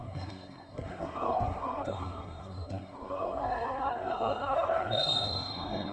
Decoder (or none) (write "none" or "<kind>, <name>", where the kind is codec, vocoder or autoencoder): codec, SNAC